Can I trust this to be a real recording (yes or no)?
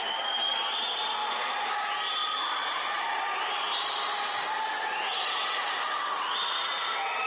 yes